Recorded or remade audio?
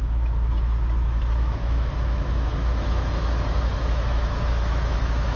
remade